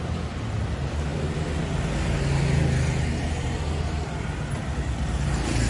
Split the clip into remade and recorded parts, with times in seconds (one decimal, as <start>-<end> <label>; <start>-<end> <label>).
0.0-5.7 recorded